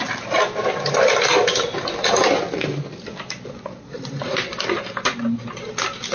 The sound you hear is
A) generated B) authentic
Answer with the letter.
B